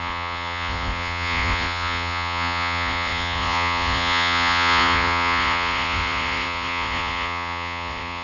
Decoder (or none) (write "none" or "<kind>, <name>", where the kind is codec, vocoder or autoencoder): vocoder, Vocos